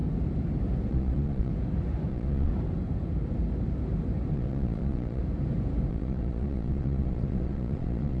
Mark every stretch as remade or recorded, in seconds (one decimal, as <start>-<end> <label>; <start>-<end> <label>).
0.0-0.9 recorded; 0.9-1.5 remade; 1.5-2.1 recorded; 2.1-2.5 remade; 2.5-4.3 recorded; 4.3-5.2 remade; 5.2-5.9 recorded; 5.9-8.2 remade